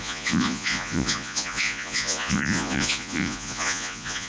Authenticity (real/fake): fake